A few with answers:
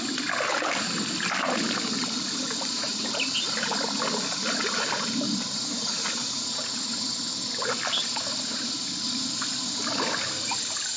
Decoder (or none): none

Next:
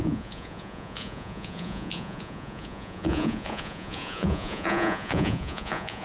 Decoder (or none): vocoder, Vocos